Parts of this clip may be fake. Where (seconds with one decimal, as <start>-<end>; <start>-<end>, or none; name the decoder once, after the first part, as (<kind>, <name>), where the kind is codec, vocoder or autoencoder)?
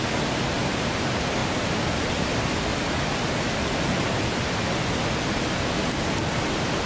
none